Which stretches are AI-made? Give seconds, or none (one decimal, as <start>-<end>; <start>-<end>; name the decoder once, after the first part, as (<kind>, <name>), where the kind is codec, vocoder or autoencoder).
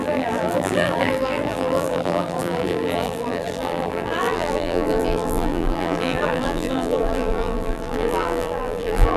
0.0-9.2 (vocoder, BigVGAN v2)